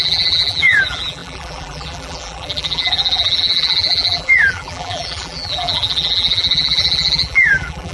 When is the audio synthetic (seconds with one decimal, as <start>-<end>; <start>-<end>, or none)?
0.0-7.9